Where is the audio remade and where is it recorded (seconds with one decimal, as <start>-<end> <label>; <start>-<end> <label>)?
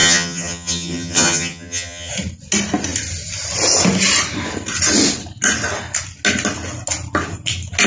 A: 0.0-2.1 remade; 2.1-7.9 recorded